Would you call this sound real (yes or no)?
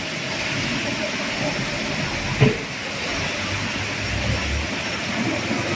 yes